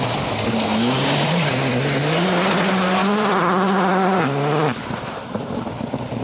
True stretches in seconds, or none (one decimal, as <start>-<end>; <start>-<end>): 0.0-1.0; 1.5-2.0; 5.7-6.2